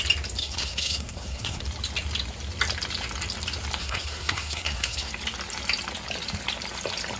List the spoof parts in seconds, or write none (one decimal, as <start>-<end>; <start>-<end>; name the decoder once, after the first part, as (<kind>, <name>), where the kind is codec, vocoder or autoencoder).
0.4-1.6 (codec, SNAC); 3.8-5.1